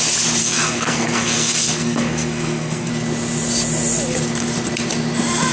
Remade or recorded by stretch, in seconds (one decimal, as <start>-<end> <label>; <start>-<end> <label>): 0.0-0.4 recorded; 0.4-2.9 remade; 2.9-5.5 recorded